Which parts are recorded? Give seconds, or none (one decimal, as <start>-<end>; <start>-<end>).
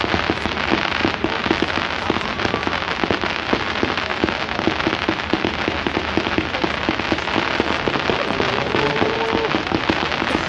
0.0-10.5